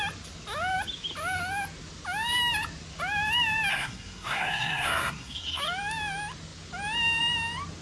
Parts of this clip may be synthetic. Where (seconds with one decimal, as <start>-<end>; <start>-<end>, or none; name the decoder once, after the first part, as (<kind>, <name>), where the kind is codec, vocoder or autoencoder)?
3.7-5.6 (codec, SNAC)

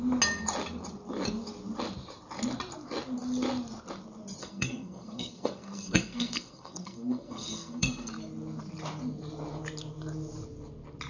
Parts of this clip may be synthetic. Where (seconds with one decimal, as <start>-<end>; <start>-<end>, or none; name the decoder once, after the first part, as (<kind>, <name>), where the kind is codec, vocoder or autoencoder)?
4.4-8.1 (codec, SNAC)